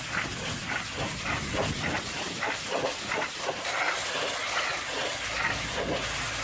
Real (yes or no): yes